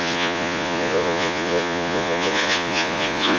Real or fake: fake